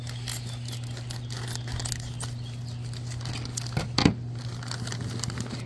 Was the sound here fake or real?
real